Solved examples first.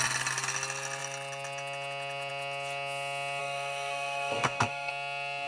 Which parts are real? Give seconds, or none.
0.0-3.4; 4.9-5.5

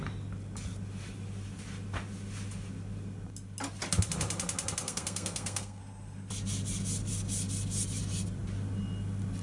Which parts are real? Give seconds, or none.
0.0-4.8; 5.8-9.4

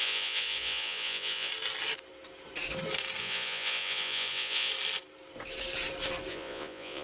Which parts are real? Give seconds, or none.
1.5-3.2; 4.7-6.3